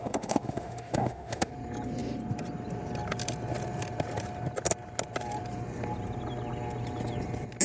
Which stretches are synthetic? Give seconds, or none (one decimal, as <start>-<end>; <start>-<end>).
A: 0.0-1.5